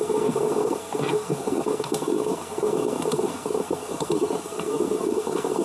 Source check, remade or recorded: remade